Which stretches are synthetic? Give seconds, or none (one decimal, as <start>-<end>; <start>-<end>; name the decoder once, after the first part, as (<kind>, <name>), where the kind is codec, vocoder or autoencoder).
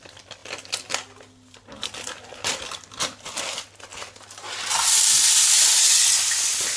0.0-0.4 (vocoder, BigVGAN v2); 2.5-3.9; 6.3-6.8